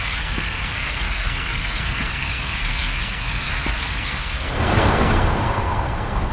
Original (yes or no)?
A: no